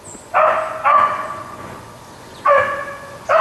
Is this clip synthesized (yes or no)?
yes